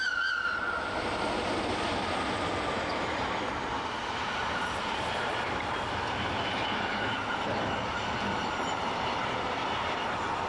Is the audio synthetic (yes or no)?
no